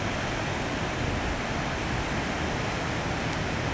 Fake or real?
real